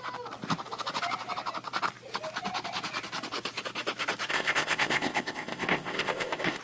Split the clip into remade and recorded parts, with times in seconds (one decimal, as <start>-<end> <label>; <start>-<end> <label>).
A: 0.0-4.3 recorded; 4.3-6.6 remade